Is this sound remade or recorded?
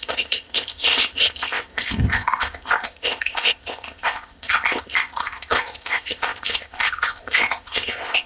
remade